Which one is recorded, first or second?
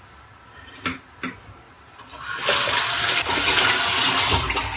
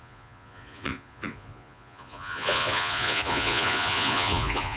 first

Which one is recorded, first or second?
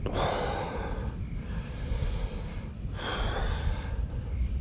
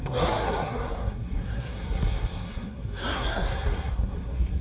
first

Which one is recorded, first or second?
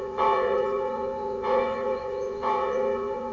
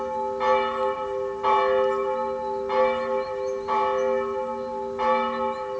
second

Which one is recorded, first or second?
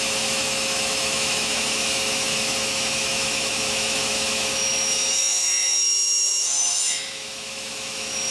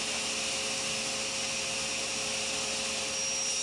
second